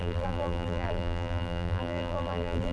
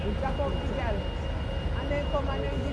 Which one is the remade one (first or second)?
first